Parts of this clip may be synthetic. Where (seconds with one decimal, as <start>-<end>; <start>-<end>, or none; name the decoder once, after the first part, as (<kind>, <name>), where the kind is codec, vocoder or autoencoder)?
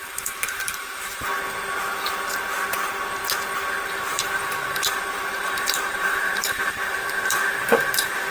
0.0-1.3 (vocoder, BigVGAN v2); 3.9-8.3